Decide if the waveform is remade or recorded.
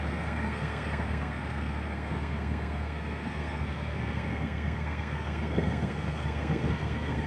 remade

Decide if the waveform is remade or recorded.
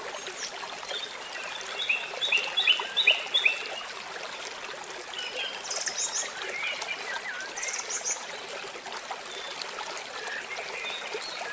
recorded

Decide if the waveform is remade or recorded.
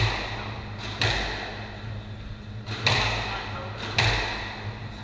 recorded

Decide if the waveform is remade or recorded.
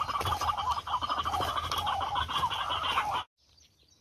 recorded